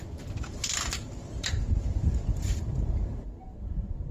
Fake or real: fake